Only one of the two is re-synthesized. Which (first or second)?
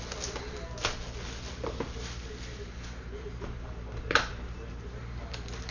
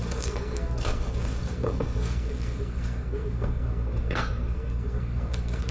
second